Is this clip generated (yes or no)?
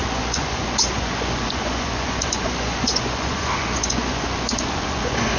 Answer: yes